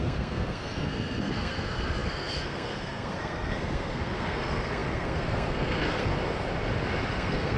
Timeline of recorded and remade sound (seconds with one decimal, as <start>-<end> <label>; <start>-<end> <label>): 0.0-6.1 remade; 6.1-7.1 recorded; 7.1-7.6 remade